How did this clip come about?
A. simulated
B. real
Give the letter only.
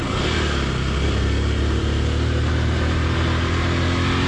B